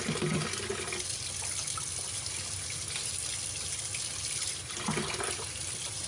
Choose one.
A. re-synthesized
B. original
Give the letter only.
B